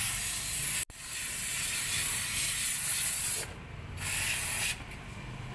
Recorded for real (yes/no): yes